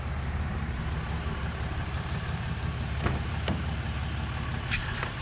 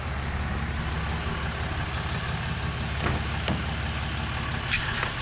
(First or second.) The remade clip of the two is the first